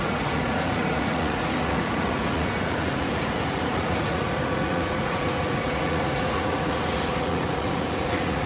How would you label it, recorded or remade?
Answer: remade